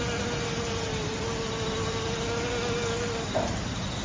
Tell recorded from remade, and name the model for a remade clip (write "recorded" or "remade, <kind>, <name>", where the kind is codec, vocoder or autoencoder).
recorded